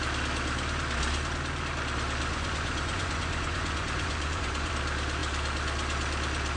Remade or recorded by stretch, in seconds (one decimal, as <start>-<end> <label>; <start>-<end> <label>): 0.0-2.3 recorded; 2.3-4.7 remade; 4.7-6.6 recorded